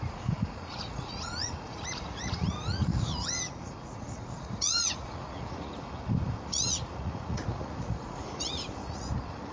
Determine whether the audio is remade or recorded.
remade